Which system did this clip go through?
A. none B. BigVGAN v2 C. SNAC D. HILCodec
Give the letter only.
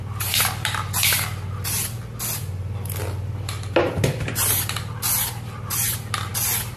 A